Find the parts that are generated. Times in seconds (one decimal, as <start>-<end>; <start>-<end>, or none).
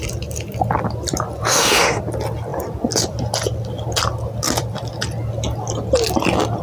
1.5-2.0